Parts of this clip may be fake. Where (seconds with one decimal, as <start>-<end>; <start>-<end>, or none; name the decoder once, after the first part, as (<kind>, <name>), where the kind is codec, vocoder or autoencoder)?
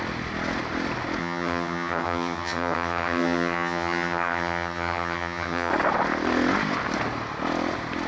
1.2-5.7 (vocoder, HiFi-GAN)